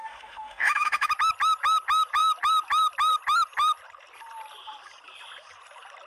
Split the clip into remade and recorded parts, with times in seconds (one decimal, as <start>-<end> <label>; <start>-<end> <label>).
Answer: 0.0-1.1 remade; 1.1-6.1 recorded

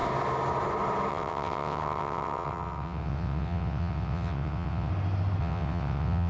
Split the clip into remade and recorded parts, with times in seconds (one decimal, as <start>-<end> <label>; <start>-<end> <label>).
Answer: 0.0-1.1 recorded; 1.1-4.9 remade; 4.9-5.4 recorded; 5.4-6.3 remade

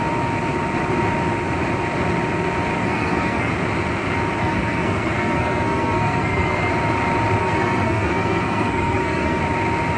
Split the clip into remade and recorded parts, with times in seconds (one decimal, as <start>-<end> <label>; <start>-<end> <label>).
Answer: 0.0-2.8 recorded; 2.8-3.5 remade; 3.5-4.4 recorded; 4.4-6.7 remade; 6.7-7.4 recorded; 7.4-9.4 remade; 9.4-10.0 recorded

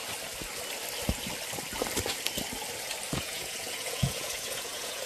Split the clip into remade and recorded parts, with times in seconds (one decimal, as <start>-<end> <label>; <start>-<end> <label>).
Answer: 0.0-3.1 recorded; 3.1-5.1 remade

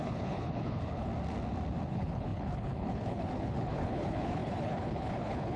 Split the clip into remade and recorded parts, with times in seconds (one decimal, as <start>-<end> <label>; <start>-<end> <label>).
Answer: 0.0-1.1 remade; 1.1-1.9 recorded; 1.9-5.6 remade

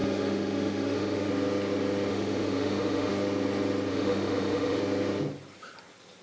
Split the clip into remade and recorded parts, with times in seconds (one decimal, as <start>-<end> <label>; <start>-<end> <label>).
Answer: 0.0-1.3 remade; 1.3-2.1 recorded; 2.1-3.1 remade; 3.1-3.9 recorded; 3.9-4.8 remade; 4.8-6.2 recorded

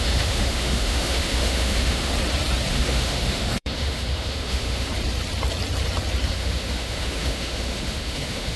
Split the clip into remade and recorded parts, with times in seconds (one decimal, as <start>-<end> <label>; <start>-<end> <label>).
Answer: 0.0-2.1 remade; 2.1-2.7 recorded; 2.7-4.9 remade; 4.9-6.3 recorded; 6.3-8.6 remade